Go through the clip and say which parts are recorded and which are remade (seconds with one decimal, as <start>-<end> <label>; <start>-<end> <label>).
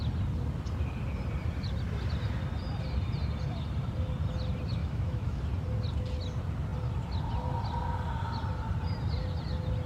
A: 0.0-4.8 recorded; 4.8-5.4 remade; 5.4-9.9 recorded